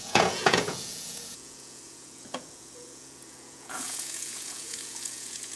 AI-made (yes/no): yes